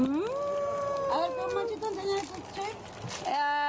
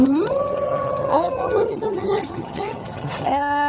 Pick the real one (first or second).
first